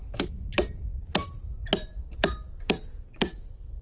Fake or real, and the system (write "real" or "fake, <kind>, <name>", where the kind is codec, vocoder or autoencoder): fake, vocoder, BigVGAN v2